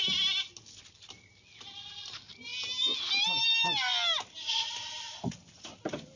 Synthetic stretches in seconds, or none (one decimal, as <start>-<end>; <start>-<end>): none